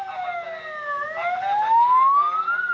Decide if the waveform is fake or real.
real